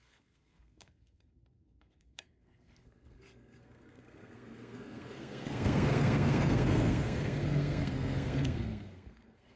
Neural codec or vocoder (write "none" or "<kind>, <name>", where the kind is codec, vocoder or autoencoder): codec, SNAC